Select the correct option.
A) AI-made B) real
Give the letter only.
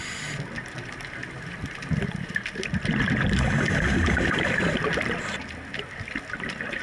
B